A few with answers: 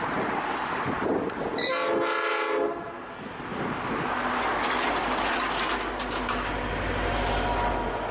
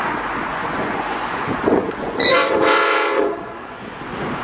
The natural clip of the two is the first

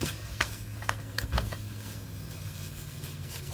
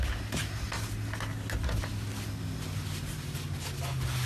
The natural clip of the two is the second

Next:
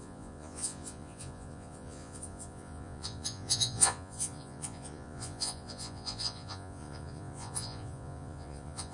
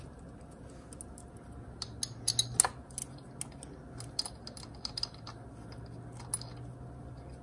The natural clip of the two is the second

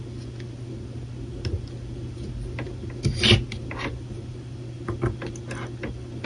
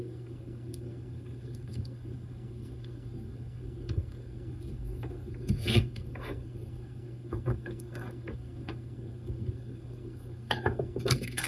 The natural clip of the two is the first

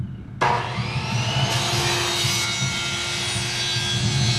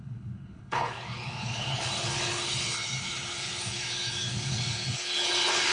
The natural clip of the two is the first